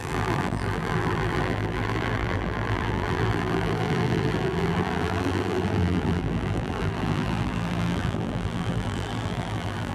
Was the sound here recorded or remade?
remade